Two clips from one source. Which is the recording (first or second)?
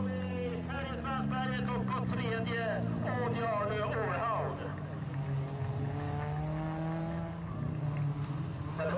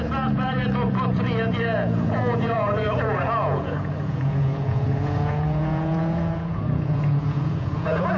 first